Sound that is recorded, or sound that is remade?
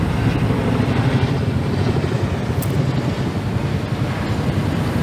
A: recorded